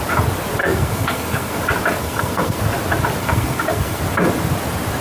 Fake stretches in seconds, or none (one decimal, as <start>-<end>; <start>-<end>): 0.6-1.6; 2.0-2.6; 3.2-4.0